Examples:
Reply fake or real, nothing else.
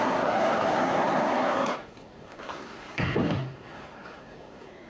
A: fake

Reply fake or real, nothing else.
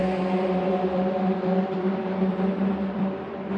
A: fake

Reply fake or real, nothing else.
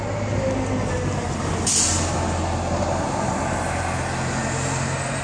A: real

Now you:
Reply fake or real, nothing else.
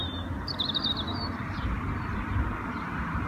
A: real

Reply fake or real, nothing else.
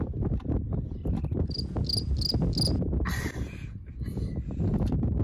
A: real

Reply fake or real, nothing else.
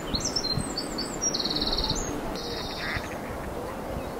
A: real